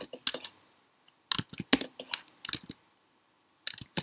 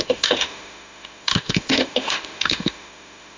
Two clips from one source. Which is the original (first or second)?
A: first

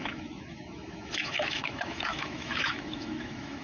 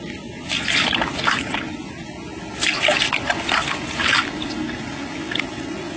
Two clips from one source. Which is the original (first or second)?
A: second